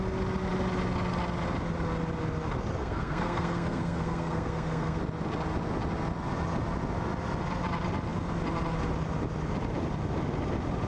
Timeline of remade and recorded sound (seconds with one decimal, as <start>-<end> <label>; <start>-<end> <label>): 0.0-2.8 recorded; 2.8-5.0 remade; 5.0-10.9 recorded